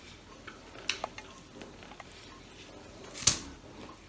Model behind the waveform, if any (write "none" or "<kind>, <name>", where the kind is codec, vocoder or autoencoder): none